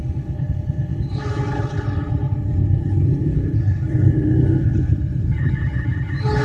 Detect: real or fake fake